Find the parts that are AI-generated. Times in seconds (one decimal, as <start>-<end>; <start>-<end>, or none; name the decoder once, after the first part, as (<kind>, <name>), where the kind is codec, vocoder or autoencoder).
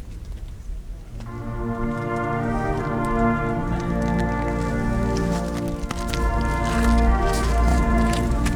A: 7.7-8.6 (vocoder, Vocos)